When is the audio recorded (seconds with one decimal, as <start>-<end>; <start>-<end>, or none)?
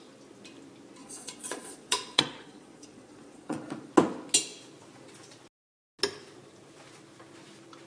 0.0-1.0; 3.9-7.9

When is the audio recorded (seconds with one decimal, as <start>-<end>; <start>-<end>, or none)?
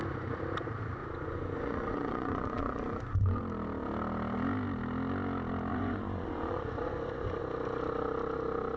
0.0-1.0; 3.4-5.7; 7.4-8.8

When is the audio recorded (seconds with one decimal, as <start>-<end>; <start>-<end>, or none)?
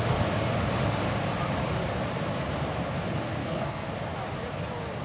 0.0-3.4; 3.9-5.0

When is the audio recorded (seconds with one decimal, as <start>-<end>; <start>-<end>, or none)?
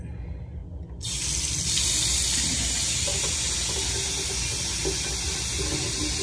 0.0-6.2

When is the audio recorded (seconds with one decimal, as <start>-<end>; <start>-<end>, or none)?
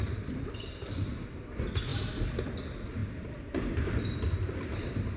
0.0-5.2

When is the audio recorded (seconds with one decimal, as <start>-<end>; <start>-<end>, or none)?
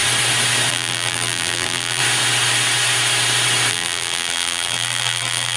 0.0-0.7; 2.0-3.7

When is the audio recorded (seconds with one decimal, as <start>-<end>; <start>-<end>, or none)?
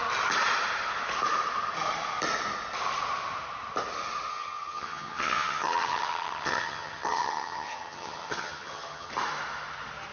0.0-4.3; 9.1-10.1